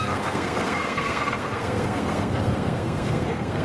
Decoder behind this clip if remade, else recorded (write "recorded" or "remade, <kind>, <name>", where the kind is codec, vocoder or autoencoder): remade, codec, SNAC